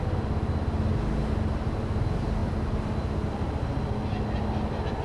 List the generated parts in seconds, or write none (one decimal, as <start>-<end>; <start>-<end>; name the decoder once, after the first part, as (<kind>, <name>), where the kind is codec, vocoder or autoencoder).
none